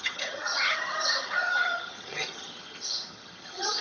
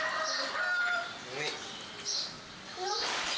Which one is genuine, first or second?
second